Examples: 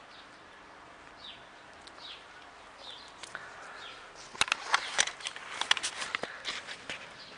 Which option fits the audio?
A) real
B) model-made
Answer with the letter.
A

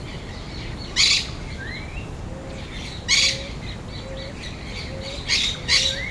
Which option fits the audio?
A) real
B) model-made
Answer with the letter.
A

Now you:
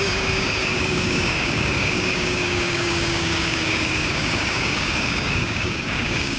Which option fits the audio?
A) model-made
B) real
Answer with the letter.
A